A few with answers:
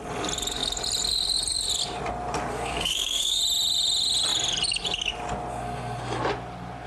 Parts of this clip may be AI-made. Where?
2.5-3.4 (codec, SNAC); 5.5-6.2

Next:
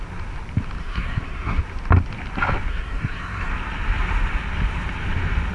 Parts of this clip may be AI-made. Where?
0.8-1.6 (codec, SNAC); 2.7-3.5

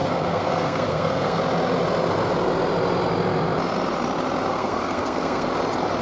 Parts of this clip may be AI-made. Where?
0.0-1.4 (codec, SNAC); 4.5-5.5

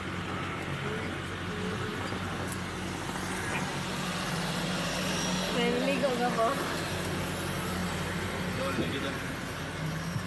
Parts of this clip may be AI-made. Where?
none

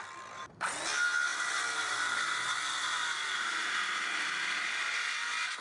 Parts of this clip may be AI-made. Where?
none

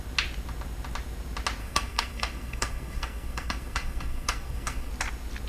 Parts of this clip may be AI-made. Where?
1.6-4.9 (codec, SNAC)

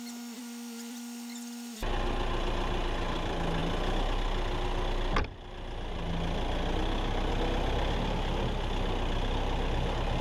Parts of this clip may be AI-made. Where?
none